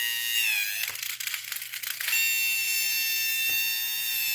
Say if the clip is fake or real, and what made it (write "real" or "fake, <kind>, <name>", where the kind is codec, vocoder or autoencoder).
real